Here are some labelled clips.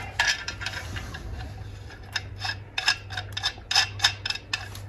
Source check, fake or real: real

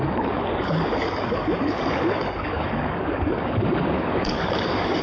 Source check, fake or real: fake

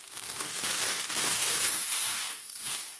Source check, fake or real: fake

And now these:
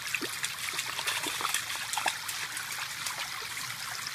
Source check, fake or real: real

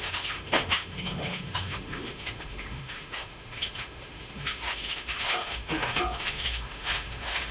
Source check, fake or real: fake